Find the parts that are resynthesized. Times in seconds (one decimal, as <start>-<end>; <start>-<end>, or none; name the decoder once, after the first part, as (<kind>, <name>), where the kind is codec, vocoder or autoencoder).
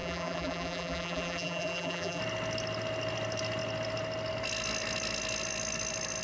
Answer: 0.0-2.2 (vocoder, BigVGAN v2)